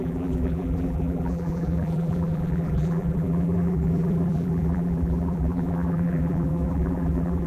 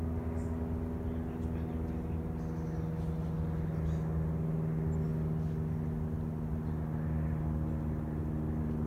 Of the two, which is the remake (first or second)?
first